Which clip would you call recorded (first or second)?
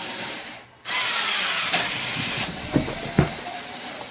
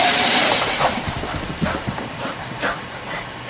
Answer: first